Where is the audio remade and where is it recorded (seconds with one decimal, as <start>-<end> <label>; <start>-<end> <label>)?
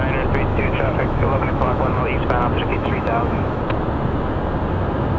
0.0-0.5 recorded; 0.5-2.0 remade; 2.0-2.7 recorded; 2.7-3.6 remade; 3.6-5.2 recorded